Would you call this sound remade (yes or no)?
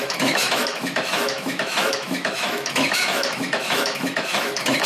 yes